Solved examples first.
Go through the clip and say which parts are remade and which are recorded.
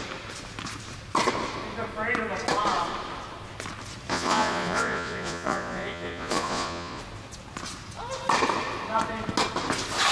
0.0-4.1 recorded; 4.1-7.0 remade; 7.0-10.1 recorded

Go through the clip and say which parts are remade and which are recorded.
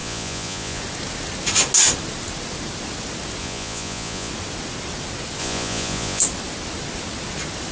0.0-0.8 remade; 0.8-3.4 recorded; 3.4-4.3 remade; 4.3-5.4 recorded; 5.4-6.2 remade; 6.2-7.7 recorded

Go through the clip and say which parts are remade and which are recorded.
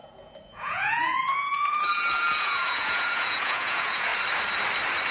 0.0-4.1 remade; 4.1-5.1 recorded